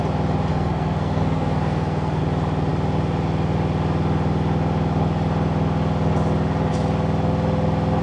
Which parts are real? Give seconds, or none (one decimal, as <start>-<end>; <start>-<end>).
0.0-0.5; 2.2-8.0